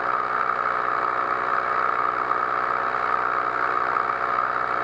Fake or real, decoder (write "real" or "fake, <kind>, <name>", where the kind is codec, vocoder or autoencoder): real